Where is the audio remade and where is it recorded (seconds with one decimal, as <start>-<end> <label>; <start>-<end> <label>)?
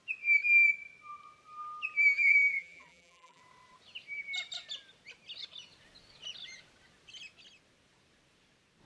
0.0-2.1 recorded; 2.1-3.4 remade; 3.4-8.9 recorded